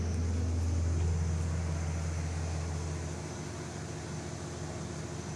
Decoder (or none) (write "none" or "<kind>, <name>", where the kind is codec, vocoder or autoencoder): none